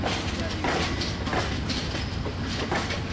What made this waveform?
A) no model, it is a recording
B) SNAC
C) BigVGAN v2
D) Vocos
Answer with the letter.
A